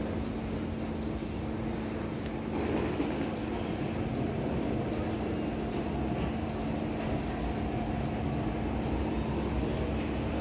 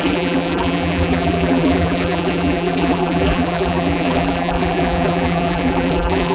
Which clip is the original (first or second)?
first